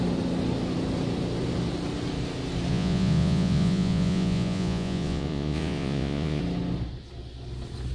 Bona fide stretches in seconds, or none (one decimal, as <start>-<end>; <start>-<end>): 0.0-2.7; 6.4-7.9